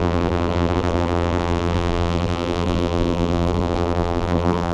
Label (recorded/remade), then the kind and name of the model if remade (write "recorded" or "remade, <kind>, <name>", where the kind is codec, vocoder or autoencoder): remade, vocoder, BigVGAN v2